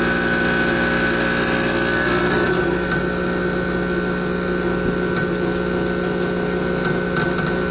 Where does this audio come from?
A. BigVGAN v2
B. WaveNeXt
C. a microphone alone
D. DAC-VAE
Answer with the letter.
C